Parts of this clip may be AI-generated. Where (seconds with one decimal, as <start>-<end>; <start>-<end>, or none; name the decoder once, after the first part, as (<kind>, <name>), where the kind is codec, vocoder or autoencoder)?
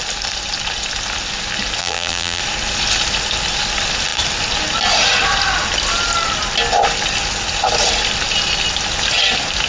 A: 1.8-2.4 (vocoder, BigVGAN v2)